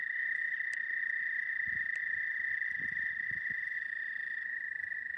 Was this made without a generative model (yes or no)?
yes